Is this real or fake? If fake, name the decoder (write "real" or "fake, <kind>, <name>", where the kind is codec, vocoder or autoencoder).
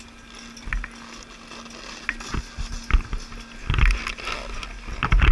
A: real